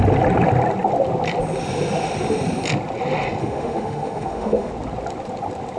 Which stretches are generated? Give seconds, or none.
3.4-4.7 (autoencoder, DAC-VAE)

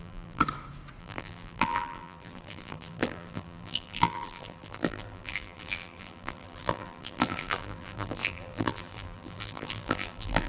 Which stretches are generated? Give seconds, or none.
0.0-0.4 (vocoder, BigVGAN v2); 1.0-10.5

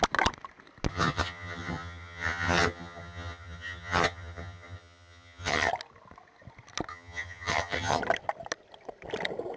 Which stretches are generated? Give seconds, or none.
0.9-5.7 (vocoder, HiFi-GAN); 6.9-8.0

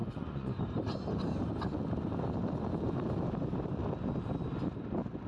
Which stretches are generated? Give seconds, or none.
0.0-0.6 (vocoder, Vocos)

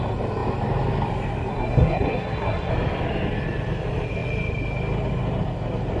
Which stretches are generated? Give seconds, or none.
1.5-2.7 (codec, SNAC)

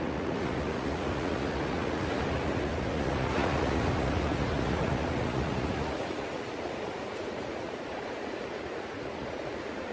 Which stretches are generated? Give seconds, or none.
0.0-9.9 (vocoder, Vocos)